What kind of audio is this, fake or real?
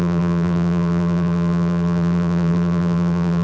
fake